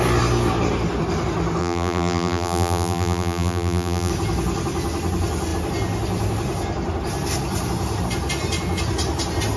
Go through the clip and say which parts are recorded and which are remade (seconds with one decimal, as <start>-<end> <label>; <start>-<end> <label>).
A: 0.0-1.6 recorded; 1.6-4.1 remade; 4.1-9.6 recorded